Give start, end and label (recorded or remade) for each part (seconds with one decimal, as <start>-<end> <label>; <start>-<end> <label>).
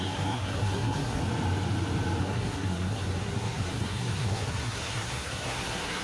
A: 0.0-1.2 remade; 1.2-2.2 recorded; 2.2-6.0 remade